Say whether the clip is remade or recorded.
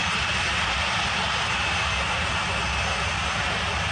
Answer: recorded